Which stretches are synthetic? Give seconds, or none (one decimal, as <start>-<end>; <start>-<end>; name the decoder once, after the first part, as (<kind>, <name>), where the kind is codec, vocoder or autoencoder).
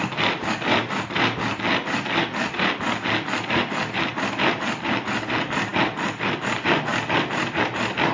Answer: none